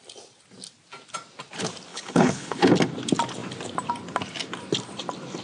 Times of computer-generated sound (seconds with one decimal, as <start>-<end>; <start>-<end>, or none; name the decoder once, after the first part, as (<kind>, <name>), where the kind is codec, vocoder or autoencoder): 1.9-2.7 (codec, HILCodec)